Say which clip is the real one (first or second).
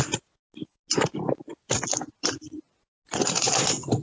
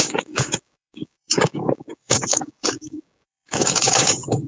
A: first